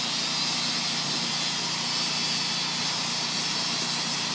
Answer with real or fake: real